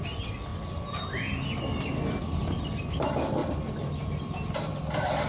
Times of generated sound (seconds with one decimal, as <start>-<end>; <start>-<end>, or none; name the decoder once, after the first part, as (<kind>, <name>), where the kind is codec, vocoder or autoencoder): none